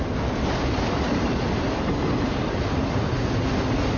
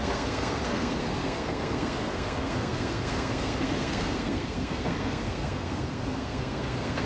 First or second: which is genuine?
first